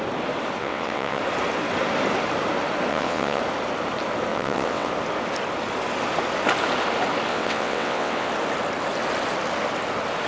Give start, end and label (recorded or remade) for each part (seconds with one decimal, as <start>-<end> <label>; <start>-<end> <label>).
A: 0.0-0.6 recorded; 0.6-1.2 remade; 1.2-2.9 recorded; 2.9-3.4 remade; 3.4-4.3 recorded; 4.3-4.9 remade; 4.9-7.3 recorded; 7.3-8.3 remade; 8.3-10.3 recorded